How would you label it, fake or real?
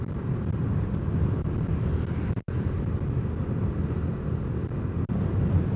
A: real